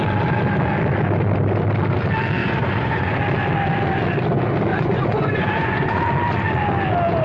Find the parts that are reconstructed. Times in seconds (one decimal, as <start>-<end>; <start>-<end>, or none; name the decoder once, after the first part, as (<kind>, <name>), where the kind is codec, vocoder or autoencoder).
2.4-3.2 (vocoder, Vocos); 4.7-6.0